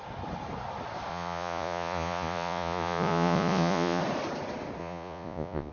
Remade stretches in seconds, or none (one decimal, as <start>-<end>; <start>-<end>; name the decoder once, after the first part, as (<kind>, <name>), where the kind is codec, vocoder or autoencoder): 1.1-4.0 (vocoder, Vocos); 4.8-5.7